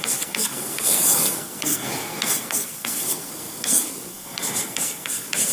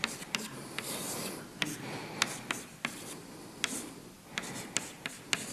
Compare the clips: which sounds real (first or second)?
second